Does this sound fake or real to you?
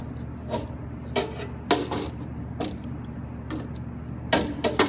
real